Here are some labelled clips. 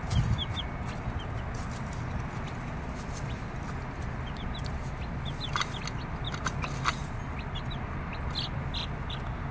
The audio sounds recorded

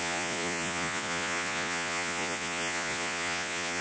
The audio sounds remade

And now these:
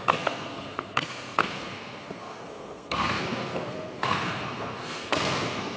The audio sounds remade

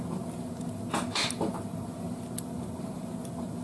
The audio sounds recorded